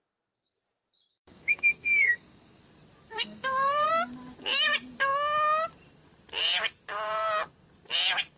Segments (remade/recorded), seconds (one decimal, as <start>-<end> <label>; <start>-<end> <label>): 0.0-1.1 recorded; 1.1-2.6 remade; 2.6-3.1 recorded; 3.1-3.9 remade; 3.9-8.4 recorded